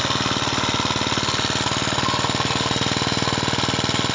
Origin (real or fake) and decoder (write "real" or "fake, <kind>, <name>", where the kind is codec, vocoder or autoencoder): real